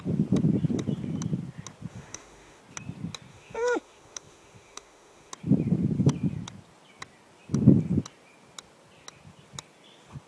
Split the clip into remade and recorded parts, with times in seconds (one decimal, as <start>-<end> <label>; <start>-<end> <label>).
0.0-1.9 recorded; 1.9-2.6 remade; 2.6-3.3 recorded; 3.3-5.3 remade; 5.3-10.3 recorded